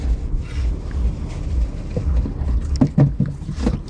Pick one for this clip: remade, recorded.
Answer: recorded